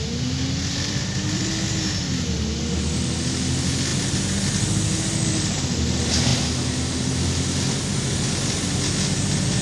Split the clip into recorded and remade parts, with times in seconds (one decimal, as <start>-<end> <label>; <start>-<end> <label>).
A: 0.0-0.6 recorded; 0.6-1.5 remade; 1.5-9.6 recorded